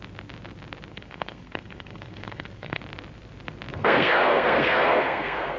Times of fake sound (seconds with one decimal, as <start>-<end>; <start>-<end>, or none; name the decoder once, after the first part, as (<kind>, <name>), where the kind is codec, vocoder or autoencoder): 0.9-2.8 (codec, SNAC); 3.7-5.6